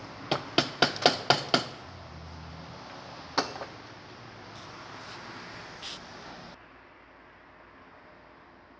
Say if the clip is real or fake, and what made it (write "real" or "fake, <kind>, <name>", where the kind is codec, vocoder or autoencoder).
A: real